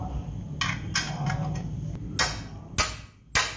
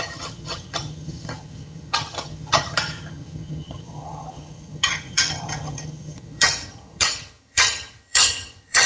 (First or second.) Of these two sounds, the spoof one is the second